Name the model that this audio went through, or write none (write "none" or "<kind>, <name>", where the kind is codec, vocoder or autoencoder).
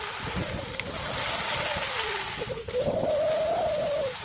none